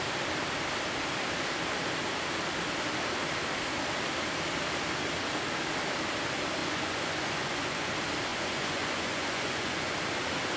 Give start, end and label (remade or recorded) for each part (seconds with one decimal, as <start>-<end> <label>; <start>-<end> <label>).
0.0-6.6 recorded; 6.6-7.9 remade; 7.9-8.3 recorded; 8.3-9.9 remade; 9.9-10.6 recorded

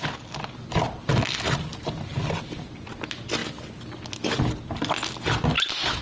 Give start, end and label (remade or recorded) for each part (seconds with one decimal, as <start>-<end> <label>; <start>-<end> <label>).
0.0-6.0 recorded

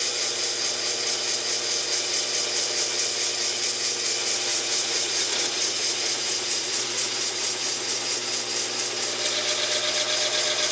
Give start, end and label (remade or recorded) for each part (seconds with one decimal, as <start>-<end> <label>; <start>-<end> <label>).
0.0-4.5 recorded; 4.5-8.0 remade; 8.0-10.7 recorded

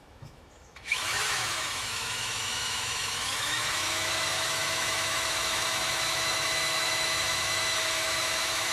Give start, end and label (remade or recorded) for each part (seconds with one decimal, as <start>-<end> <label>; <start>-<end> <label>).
0.0-8.7 remade

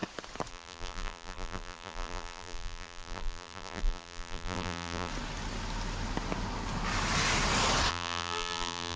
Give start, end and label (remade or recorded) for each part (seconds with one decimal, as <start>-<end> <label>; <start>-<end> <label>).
0.0-0.5 recorded; 0.5-5.1 remade; 5.1-7.9 recorded; 7.9-9.0 remade

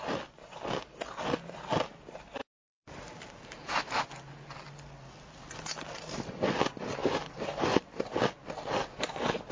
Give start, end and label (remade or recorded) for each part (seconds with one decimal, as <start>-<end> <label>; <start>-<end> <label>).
0.0-2.4 recorded; 2.4-3.8 remade; 3.8-7.0 recorded; 7.0-8.0 remade; 8.0-9.5 recorded

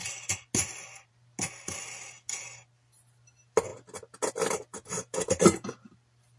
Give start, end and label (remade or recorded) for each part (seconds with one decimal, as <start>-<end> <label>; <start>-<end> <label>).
0.0-4.7 recorded; 4.7-5.9 remade; 5.9-6.4 recorded